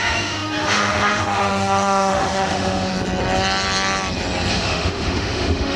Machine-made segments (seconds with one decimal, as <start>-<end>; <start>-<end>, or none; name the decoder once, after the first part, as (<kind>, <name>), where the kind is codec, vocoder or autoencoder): 0.0-2.9 (autoencoder, DAC-VAE); 4.5-5.8

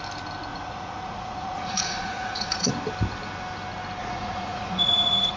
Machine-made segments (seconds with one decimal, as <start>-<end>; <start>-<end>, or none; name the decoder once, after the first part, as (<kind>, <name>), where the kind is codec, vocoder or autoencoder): 0.5-2.7 (vocoder, Vocos); 4.0-5.4